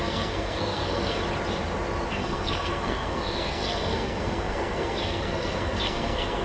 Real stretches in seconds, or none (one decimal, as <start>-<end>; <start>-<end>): 1.2-2.1